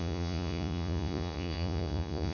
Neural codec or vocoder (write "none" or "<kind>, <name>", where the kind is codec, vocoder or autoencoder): vocoder, Vocos